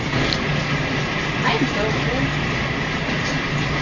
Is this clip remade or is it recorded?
recorded